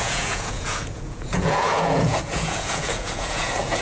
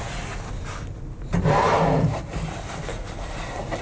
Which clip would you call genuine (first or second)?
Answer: second